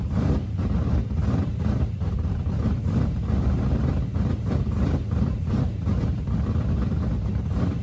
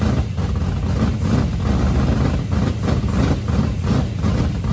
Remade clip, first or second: first